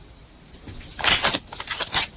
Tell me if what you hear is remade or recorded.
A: recorded